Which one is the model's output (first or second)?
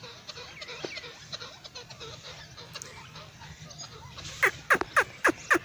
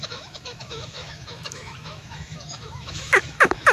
second